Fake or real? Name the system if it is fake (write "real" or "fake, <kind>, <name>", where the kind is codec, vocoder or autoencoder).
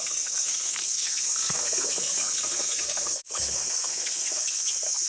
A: fake, codec, SNAC